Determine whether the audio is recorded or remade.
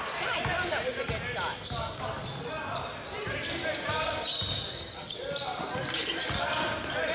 remade